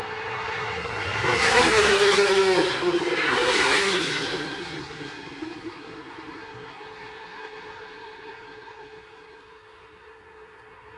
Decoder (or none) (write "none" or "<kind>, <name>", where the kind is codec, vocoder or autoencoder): codec, SNAC